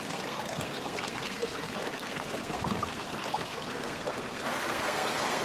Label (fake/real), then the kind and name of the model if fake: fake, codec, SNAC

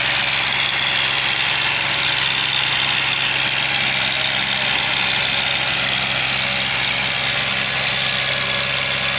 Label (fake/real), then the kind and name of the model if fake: real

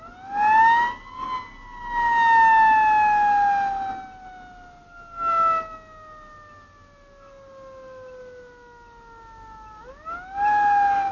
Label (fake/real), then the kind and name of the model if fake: real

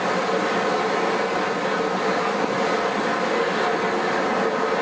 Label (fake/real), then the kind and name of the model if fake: real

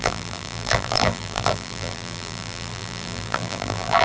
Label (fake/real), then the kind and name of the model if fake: fake, vocoder, BigVGAN v2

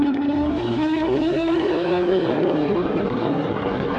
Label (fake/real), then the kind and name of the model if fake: fake, codec, SNAC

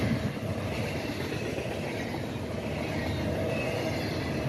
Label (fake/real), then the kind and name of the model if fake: real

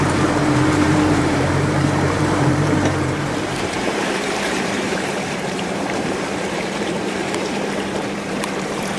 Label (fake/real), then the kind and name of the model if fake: fake, vocoder, BigVGAN v2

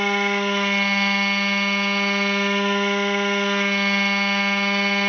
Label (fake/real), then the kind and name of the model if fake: real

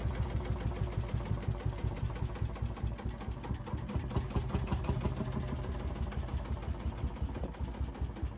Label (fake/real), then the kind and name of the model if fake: real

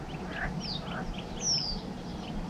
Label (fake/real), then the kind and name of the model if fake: real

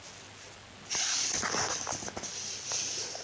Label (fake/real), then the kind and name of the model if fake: real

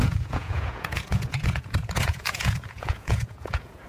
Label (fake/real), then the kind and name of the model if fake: fake, vocoder, Vocos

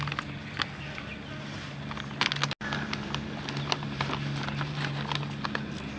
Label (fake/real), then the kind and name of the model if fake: real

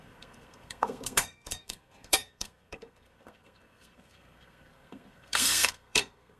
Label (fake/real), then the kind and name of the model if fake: fake, codec, SNAC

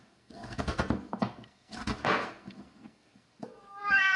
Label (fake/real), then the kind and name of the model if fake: fake, codec, SNAC